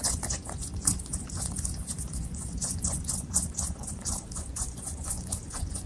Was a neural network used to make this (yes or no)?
yes